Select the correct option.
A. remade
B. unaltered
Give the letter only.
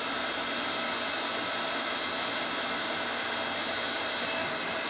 B